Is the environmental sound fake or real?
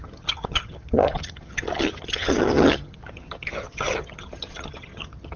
fake